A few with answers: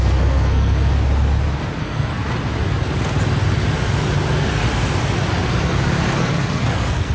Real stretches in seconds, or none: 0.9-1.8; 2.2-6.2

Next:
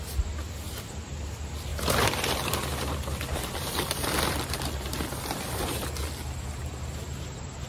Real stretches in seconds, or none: 0.0-7.7

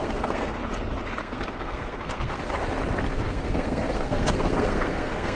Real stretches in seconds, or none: 0.6-1.2; 2.5-3.1

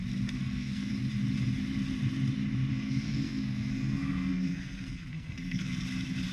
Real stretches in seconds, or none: 0.0-0.4; 0.9-2.7; 5.8-6.3